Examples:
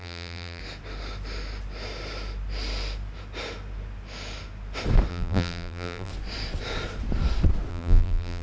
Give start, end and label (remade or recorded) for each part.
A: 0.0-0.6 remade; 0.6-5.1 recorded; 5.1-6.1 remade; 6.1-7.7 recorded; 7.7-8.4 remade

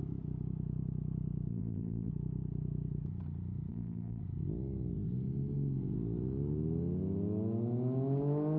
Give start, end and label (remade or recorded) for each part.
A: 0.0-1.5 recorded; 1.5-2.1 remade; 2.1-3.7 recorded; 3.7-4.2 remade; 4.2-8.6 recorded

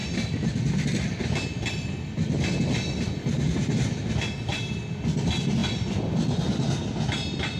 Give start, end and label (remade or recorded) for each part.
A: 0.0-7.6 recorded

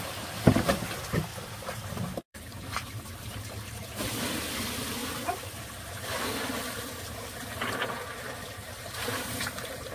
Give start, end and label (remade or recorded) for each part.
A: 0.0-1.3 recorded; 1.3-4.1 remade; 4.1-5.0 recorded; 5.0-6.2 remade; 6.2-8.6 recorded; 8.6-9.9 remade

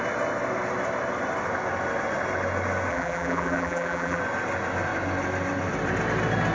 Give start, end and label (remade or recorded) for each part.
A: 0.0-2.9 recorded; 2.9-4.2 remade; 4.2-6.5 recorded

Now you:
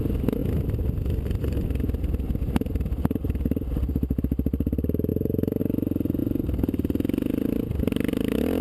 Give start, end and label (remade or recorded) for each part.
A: 0.0-5.1 recorded; 5.1-5.6 remade; 5.6-8.6 recorded

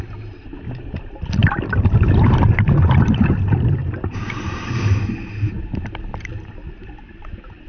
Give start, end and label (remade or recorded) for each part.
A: 0.0-3.8 recorded; 3.8-5.0 remade; 5.0-7.7 recorded